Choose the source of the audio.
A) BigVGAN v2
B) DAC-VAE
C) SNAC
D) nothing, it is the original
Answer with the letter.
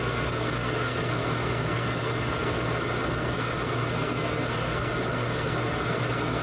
C